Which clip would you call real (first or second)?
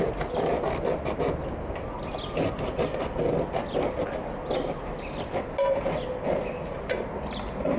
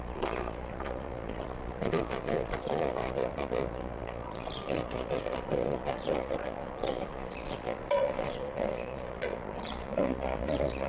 first